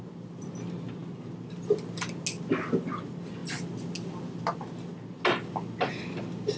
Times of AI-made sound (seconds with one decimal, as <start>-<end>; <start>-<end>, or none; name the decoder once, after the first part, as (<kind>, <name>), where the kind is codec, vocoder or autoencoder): none